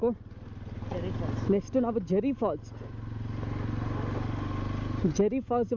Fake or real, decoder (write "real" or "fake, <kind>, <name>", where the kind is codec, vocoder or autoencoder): real